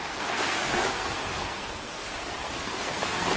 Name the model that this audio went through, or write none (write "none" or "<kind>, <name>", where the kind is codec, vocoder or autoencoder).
codec, SNAC